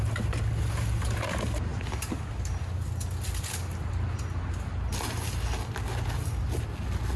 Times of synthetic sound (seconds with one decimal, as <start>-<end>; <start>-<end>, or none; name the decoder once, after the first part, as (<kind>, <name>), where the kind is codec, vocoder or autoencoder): none